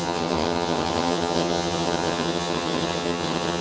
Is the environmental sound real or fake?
fake